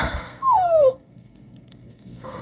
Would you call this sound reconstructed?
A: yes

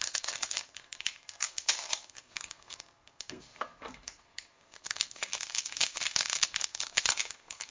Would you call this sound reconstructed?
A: yes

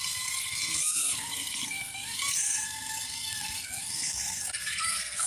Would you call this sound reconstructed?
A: yes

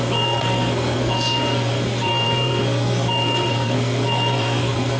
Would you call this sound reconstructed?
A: yes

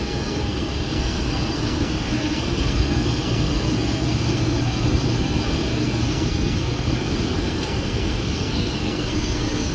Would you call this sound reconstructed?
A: yes